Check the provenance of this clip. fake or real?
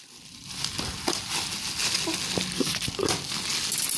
real